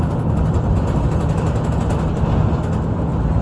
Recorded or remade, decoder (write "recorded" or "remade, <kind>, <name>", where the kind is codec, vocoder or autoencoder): recorded